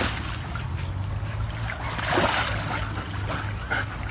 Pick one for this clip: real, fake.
real